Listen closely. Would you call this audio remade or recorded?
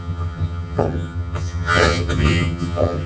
remade